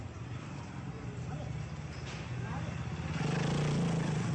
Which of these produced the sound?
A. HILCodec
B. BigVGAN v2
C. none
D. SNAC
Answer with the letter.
C